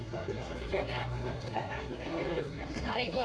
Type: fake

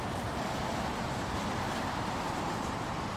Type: real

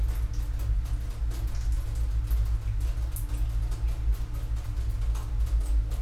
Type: real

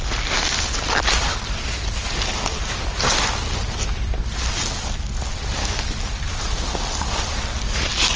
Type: real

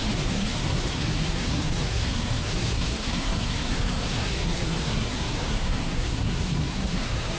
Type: fake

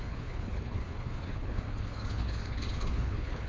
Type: fake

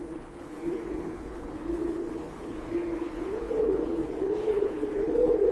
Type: fake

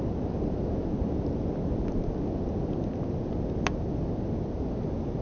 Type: real